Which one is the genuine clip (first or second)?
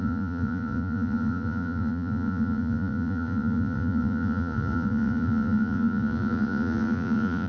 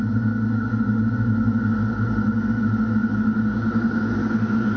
second